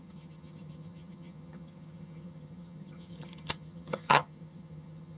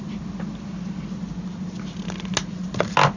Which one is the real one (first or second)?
second